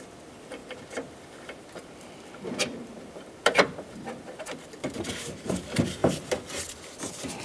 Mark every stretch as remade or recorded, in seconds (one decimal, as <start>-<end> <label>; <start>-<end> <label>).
0.0-7.4 remade